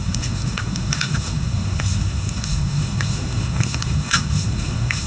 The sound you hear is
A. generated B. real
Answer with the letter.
A